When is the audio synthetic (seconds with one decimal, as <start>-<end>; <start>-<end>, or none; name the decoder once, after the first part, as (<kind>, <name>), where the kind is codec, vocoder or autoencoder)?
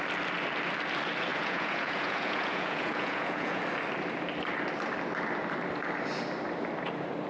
1.3-3.6 (vocoder, Vocos)